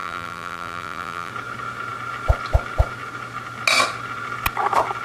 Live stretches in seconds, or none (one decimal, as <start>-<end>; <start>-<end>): 1.3-5.0

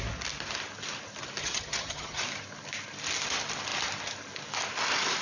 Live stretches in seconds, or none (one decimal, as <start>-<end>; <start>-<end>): 0.0-1.4; 2.2-5.2

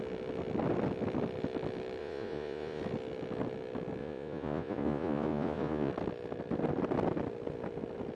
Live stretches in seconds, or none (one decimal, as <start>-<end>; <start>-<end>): 0.0-2.0; 2.8-4.0; 5.9-8.2

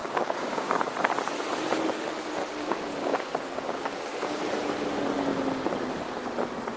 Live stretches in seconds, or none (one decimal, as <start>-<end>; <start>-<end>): 0.8-2.4; 4.5-6.8

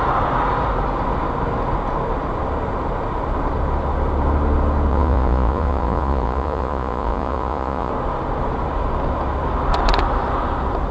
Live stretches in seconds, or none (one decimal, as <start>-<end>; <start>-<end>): 0.0-4.9; 7.9-10.9

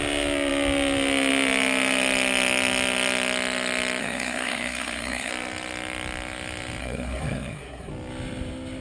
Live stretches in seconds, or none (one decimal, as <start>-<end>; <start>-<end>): 0.0-4.0; 5.3-6.8; 7.9-8.8